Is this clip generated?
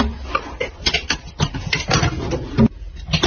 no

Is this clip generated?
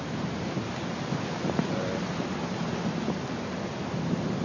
yes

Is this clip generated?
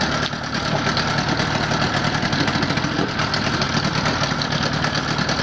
no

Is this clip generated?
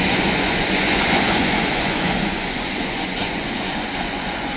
yes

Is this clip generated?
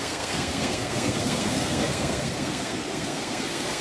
yes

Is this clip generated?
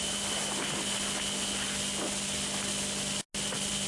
no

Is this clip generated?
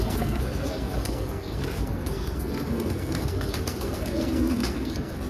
yes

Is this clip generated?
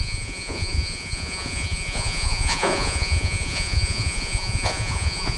yes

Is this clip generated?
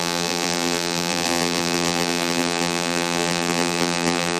yes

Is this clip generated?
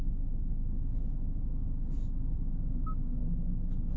no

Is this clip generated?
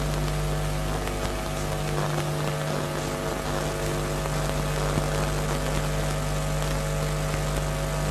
no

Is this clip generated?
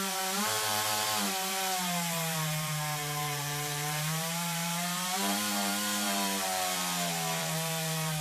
yes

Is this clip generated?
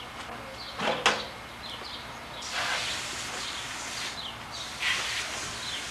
no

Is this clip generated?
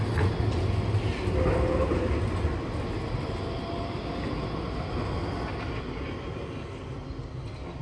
no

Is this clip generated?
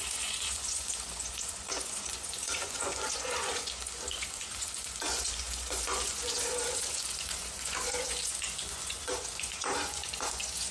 yes